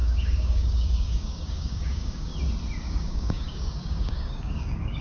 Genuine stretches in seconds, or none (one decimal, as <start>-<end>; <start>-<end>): 2.3-2.8